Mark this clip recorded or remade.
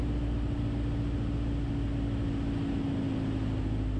recorded